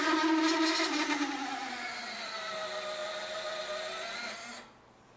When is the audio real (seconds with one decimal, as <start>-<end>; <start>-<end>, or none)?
0.0-5.2